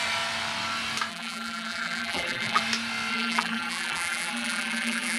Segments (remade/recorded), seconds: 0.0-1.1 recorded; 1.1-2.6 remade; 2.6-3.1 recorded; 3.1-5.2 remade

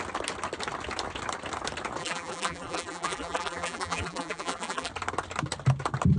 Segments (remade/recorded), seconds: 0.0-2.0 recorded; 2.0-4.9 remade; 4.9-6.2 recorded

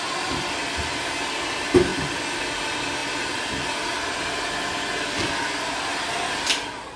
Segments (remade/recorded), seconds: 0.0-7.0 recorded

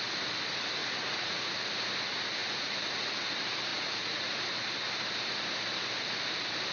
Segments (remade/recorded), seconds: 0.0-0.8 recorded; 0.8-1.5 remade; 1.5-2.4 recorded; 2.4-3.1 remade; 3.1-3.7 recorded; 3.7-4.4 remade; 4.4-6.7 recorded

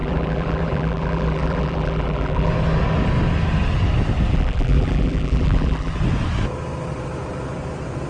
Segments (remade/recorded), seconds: 0.0-2.5 remade; 2.5-4.3 recorded; 4.3-5.9 remade; 5.9-8.1 recorded

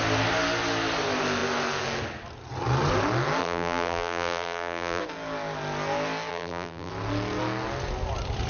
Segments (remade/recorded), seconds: 0.0-3.4 recorded; 3.4-5.0 remade; 5.0-6.3 recorded; 6.3-6.9 remade; 6.9-8.5 recorded